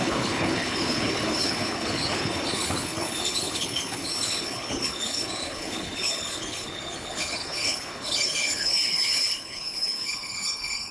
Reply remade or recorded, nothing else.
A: remade